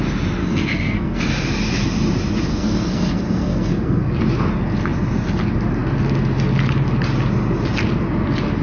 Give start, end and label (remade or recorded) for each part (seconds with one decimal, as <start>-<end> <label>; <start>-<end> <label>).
0.0-0.4 recorded; 0.4-1.2 remade; 1.2-2.5 recorded; 2.5-4.2 remade; 4.2-8.6 recorded